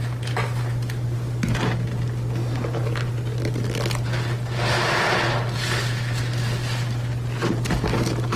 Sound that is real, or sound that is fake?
real